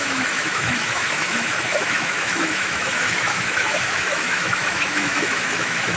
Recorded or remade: remade